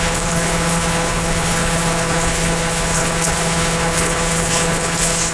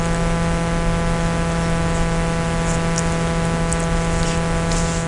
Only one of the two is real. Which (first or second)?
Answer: second